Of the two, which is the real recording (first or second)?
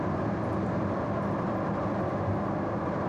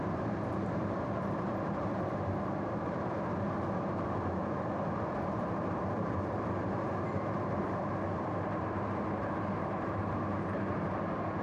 first